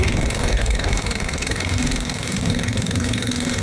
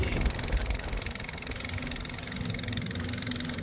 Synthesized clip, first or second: first